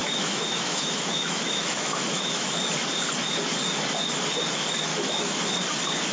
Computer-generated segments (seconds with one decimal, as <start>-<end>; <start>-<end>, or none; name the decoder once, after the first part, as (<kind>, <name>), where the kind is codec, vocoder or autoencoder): 0.0-2.7 (autoencoder, DAC-VAE); 4.9-5.4